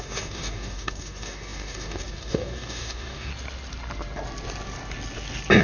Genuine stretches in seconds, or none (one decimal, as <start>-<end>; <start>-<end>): 3.3-5.6